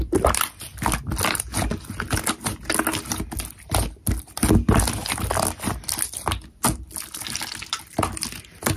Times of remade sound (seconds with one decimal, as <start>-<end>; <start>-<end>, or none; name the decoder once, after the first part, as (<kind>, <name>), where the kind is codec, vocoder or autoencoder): none